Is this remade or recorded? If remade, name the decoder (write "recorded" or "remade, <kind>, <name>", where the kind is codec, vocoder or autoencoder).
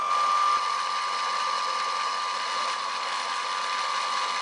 recorded